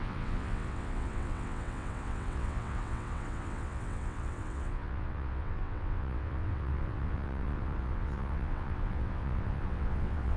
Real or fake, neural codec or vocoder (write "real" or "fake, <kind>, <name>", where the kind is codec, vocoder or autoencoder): fake, vocoder, WaveNeXt